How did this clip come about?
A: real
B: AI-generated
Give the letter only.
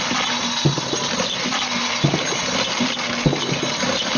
A